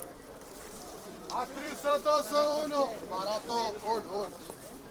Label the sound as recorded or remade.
remade